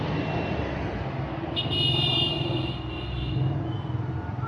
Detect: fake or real real